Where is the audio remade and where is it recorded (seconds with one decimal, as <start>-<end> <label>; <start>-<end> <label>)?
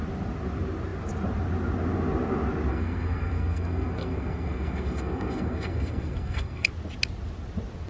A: 0.0-2.7 recorded; 2.7-6.7 remade; 6.7-7.9 recorded